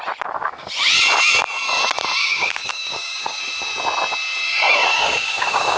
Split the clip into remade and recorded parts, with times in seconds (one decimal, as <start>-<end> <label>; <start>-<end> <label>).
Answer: 0.0-2.2 recorded; 2.2-3.4 remade; 3.4-4.9 recorded; 4.9-5.8 remade